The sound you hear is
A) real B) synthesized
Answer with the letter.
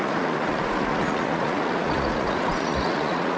B